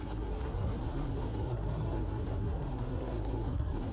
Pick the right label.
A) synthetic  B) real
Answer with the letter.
A